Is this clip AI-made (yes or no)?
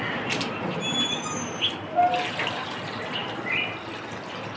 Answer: no